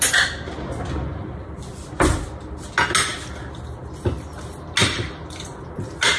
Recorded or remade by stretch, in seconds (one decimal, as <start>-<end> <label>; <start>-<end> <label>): 0.0-6.2 recorded